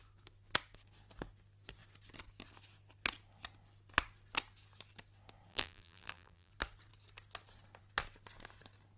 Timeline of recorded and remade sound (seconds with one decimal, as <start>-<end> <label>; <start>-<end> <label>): 0.0-5.5 recorded; 5.5-6.5 remade; 6.5-9.0 recorded